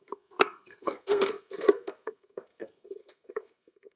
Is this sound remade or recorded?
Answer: remade